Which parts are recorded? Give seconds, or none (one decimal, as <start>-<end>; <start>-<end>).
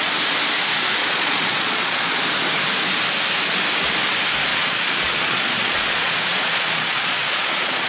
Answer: 0.0-1.0; 2.2-4.5